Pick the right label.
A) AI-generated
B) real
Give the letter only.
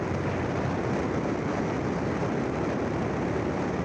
B